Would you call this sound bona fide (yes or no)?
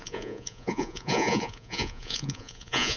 no